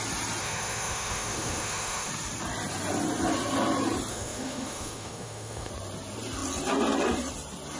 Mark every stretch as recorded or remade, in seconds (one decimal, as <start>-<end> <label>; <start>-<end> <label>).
0.0-0.4 recorded; 0.4-2.1 remade; 2.1-4.1 recorded; 4.1-5.7 remade; 5.7-7.8 recorded